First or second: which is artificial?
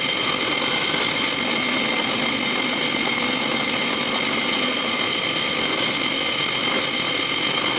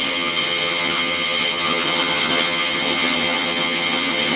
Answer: second